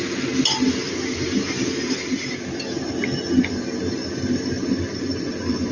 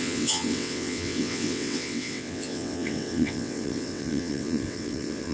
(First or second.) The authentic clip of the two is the first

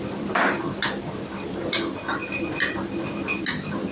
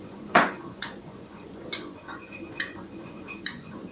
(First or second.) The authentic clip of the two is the first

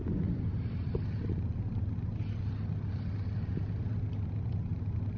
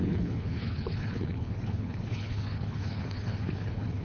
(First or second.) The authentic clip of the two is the first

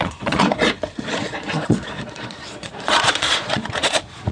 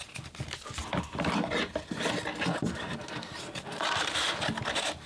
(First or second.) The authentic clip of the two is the second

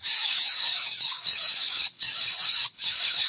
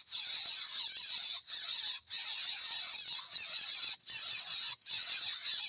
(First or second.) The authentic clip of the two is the second